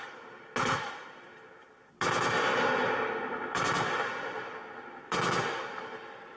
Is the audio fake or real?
real